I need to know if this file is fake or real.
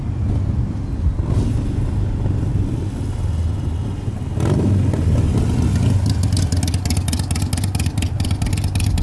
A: real